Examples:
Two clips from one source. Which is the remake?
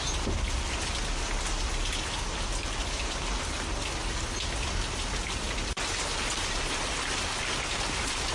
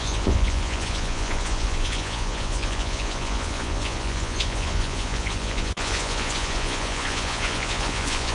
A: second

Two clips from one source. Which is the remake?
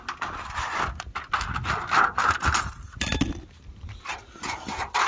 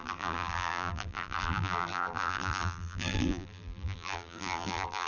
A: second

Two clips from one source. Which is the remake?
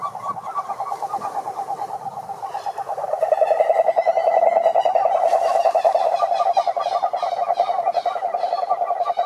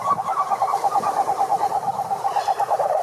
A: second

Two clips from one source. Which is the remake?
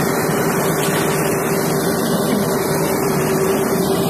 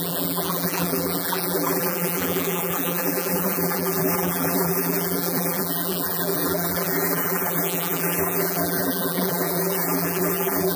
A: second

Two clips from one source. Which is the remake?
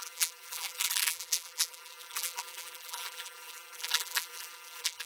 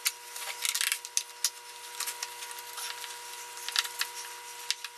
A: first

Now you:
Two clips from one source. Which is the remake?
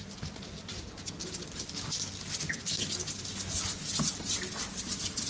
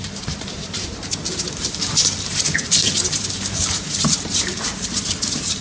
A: second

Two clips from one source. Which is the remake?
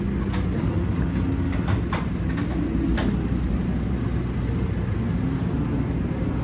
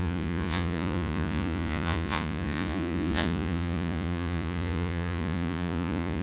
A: second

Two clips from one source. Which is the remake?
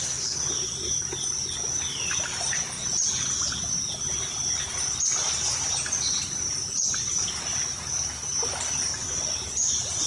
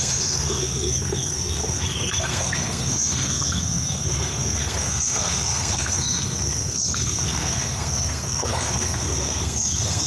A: second